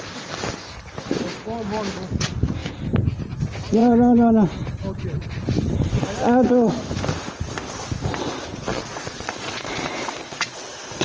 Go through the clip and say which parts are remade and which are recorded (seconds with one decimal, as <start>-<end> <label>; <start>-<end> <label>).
0.0-8.7 recorded; 8.7-10.6 remade; 10.6-11.0 recorded